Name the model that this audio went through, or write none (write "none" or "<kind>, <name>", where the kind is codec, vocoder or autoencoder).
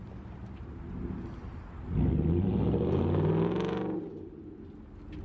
none